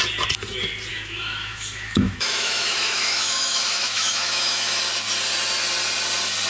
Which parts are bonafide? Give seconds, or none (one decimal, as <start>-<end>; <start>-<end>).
0.0-0.9; 4.8-6.5